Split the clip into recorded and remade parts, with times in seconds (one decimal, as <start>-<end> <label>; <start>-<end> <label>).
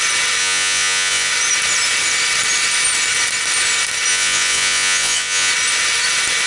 0.0-0.4 recorded; 0.4-1.3 remade; 1.3-4.1 recorded; 4.1-5.5 remade; 5.5-6.5 recorded